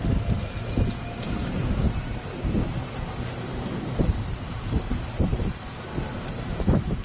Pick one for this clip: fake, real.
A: fake